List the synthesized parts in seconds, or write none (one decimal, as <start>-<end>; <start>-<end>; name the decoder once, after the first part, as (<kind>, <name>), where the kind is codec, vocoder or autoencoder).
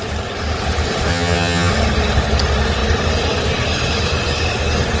1.1-1.7 (vocoder, HiFi-GAN)